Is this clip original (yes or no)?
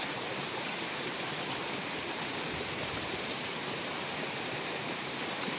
no